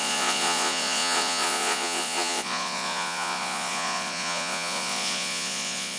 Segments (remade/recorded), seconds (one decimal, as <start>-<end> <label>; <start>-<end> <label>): 0.0-6.0 remade